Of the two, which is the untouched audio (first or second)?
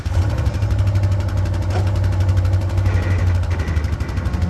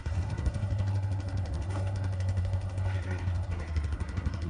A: first